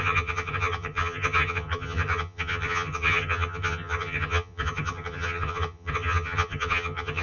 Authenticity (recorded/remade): remade